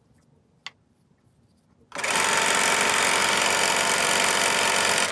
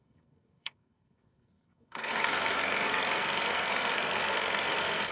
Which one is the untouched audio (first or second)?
first